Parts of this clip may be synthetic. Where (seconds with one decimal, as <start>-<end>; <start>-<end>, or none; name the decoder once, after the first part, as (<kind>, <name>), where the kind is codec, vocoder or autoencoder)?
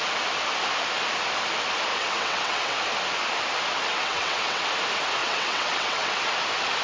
1.9-2.8 (vocoder, WaveNeXt); 3.9-4.6; 5.2-6.3